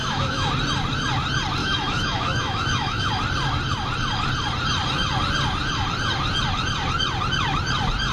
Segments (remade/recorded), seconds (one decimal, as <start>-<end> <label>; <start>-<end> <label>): 0.0-0.5 remade; 0.5-1.6 recorded; 1.6-3.1 remade; 3.1-8.1 recorded